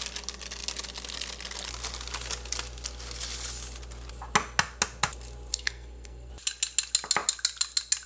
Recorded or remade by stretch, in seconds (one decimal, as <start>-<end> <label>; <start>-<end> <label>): 0.0-5.5 recorded; 5.5-6.3 remade; 6.3-8.1 recorded